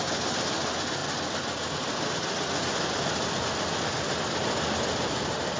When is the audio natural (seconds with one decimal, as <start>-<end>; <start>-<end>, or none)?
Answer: 0.0-5.6